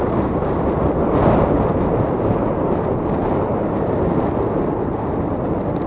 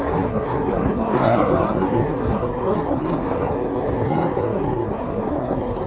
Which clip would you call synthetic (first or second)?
second